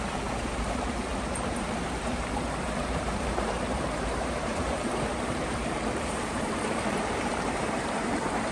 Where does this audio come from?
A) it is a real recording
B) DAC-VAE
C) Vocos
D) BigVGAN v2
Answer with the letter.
D